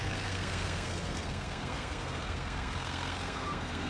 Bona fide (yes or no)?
no